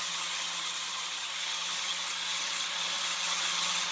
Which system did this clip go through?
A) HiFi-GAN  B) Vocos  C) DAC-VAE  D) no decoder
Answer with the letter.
A